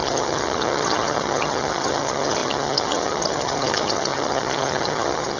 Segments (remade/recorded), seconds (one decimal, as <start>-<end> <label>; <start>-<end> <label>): 0.0-5.4 remade